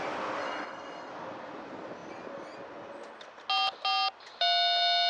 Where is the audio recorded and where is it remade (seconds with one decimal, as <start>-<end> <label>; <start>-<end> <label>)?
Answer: 0.0-0.4 recorded; 0.4-1.1 remade; 1.1-5.1 recorded